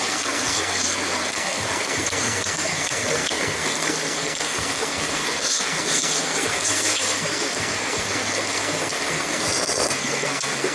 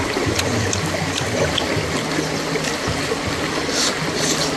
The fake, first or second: first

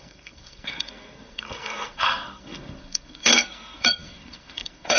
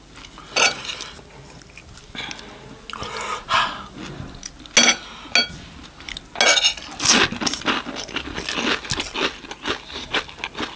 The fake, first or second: first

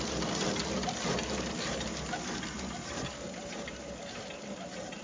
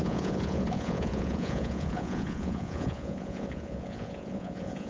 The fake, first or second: second